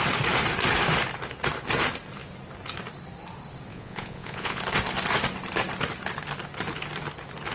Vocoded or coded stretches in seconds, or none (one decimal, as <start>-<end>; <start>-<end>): 3.7-4.6